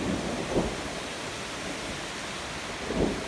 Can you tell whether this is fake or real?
real